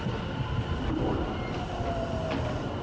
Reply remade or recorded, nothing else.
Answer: recorded